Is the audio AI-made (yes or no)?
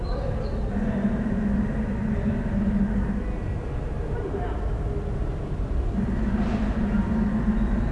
no